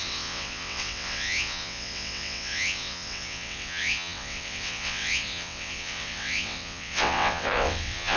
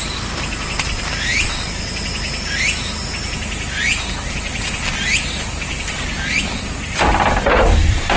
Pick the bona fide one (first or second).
second